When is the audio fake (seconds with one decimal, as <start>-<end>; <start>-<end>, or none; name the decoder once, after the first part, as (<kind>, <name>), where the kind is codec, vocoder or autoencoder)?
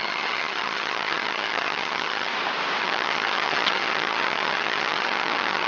0.0-2.3 (vocoder, HiFi-GAN); 2.8-5.7